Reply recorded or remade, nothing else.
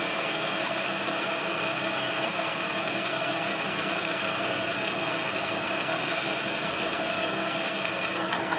remade